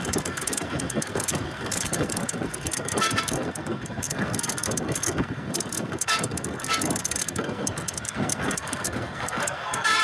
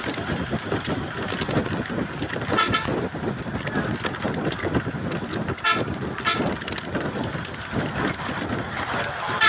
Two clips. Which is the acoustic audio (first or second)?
second